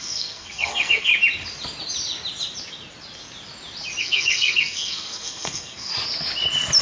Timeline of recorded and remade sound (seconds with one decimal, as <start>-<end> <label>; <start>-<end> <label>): 0.0-1.1 remade; 1.1-4.0 recorded; 4.0-5.9 remade; 5.9-6.8 recorded